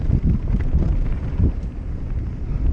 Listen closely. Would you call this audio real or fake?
real